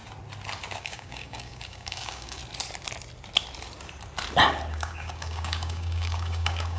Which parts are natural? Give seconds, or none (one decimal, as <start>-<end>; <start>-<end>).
0.0-0.8; 2.4-4.7